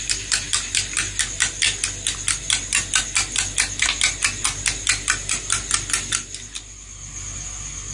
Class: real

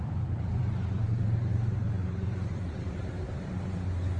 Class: fake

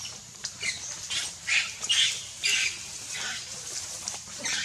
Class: real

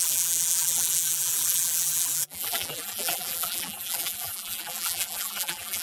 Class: fake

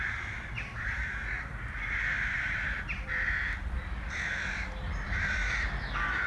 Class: fake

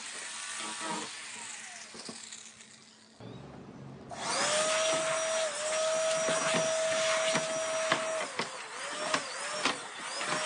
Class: real